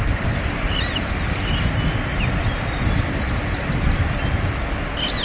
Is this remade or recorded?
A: recorded